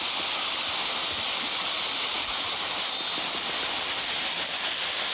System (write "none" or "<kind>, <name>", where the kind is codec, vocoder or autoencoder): none